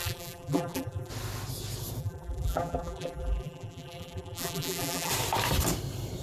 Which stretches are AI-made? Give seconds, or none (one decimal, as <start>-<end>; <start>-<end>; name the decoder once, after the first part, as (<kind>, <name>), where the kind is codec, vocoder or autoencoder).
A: 0.0-1.1 (vocoder, BigVGAN v2); 2.0-5.1